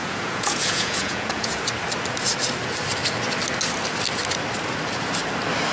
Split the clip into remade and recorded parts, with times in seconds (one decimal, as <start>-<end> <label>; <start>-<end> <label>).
0.0-1.6 remade; 1.6-5.7 recorded